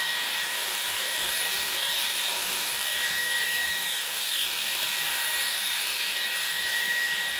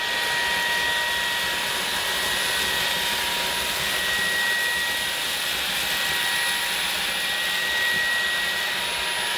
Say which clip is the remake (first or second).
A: first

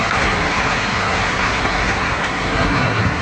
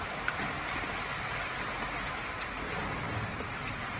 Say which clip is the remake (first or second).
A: first